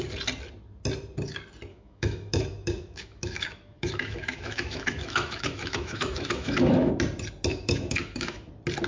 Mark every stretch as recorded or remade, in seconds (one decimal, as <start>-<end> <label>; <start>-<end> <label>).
0.0-1.7 recorded; 1.7-6.9 remade; 6.9-7.5 recorded; 7.5-8.5 remade; 8.5-8.9 recorded